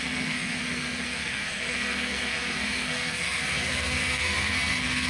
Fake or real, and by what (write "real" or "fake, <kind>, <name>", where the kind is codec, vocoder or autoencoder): fake, codec, SNAC